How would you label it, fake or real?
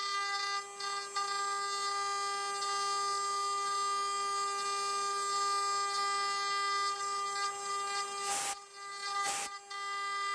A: real